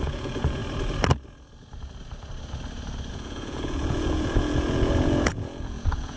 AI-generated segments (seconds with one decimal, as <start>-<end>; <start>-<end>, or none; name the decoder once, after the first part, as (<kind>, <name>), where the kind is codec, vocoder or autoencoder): 0.0-0.6 (vocoder, Vocos); 3.1-6.2